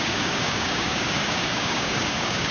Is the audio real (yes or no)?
no